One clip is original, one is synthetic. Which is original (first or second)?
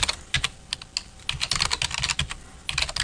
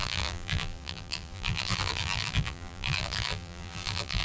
first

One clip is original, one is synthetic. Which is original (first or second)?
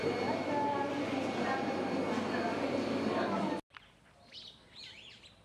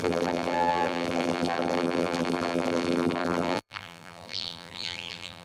first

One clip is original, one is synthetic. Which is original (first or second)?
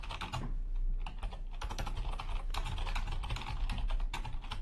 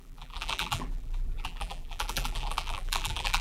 first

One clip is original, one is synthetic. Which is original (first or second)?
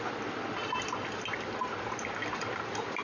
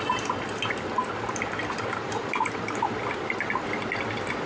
first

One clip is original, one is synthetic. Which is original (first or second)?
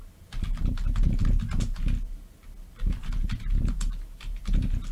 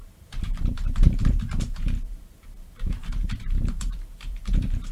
first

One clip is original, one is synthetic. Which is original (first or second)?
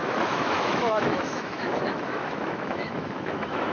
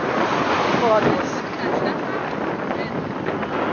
second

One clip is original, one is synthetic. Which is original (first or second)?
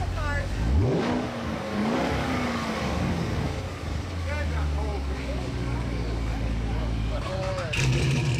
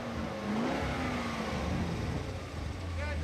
second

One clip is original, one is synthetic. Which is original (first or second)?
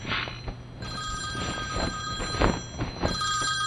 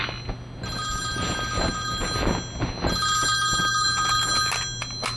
second